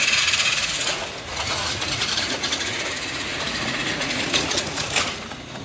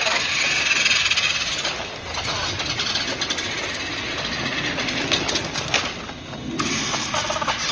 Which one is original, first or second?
second